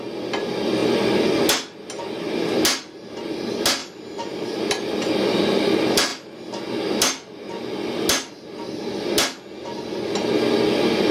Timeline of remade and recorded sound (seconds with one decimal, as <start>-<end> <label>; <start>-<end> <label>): 0.0-3.8 recorded; 3.8-5.1 remade; 5.1-11.1 recorded